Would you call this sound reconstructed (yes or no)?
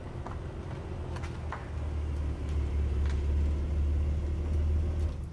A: no